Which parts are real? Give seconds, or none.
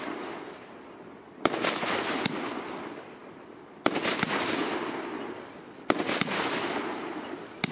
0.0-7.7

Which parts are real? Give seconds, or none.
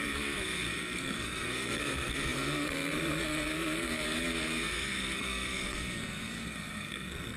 none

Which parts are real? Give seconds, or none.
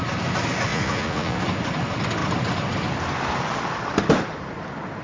0.0-0.7; 1.4-5.0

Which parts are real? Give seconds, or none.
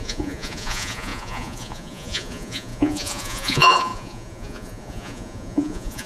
none